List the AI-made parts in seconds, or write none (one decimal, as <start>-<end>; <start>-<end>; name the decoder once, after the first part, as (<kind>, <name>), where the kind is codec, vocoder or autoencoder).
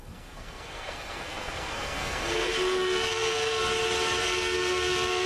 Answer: 0.0-3.6 (codec, SNAC); 4.2-5.3